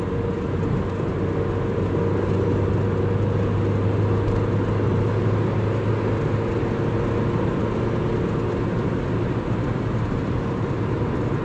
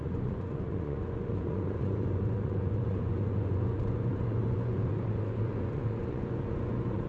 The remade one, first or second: second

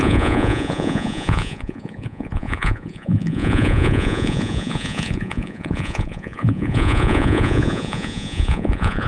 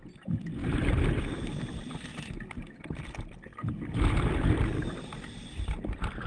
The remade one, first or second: first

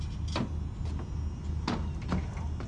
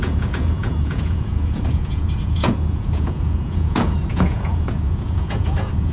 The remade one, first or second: second